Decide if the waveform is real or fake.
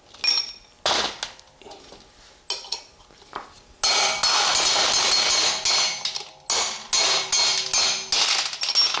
real